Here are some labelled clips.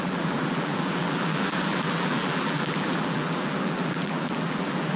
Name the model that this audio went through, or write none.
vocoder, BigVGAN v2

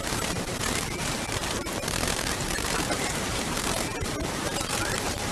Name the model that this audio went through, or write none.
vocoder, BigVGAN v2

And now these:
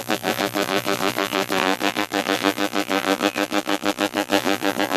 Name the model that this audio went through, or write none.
vocoder, BigVGAN v2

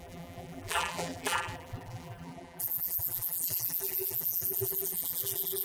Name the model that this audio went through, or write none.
vocoder, BigVGAN v2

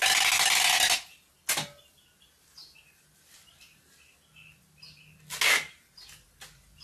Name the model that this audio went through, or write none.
none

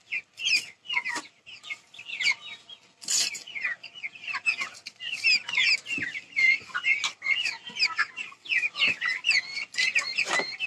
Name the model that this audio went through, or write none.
none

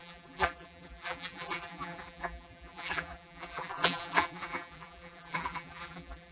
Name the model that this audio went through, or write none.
vocoder, BigVGAN v2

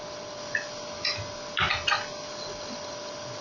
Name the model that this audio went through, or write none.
none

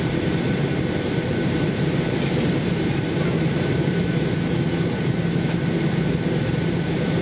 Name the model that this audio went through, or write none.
vocoder, BigVGAN v2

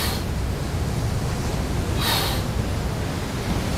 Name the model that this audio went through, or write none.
none